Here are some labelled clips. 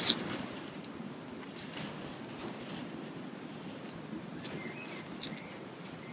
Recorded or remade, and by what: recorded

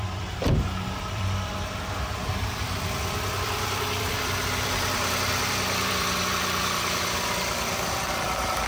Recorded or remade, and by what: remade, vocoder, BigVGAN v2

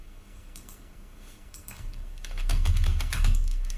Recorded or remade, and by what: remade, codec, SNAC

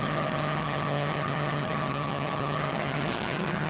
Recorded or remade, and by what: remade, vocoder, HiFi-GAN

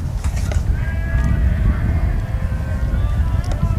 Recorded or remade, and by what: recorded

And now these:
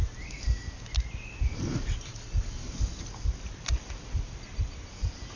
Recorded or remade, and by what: recorded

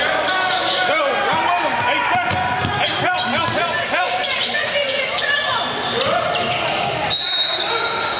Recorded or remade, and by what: recorded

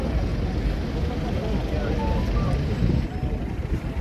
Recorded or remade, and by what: recorded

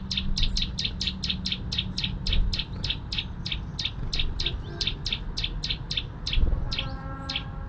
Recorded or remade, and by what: recorded